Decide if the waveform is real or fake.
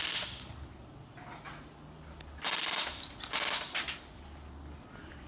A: real